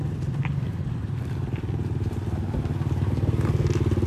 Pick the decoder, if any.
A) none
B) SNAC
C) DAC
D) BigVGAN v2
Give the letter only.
A